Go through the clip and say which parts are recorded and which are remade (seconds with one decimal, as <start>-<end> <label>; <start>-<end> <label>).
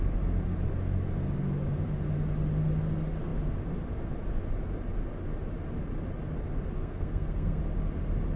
0.0-6.8 recorded; 6.8-7.6 remade; 7.6-8.4 recorded